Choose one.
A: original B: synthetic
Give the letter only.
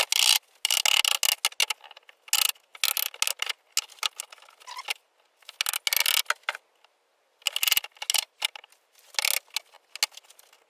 A